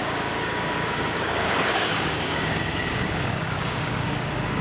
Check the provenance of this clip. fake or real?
fake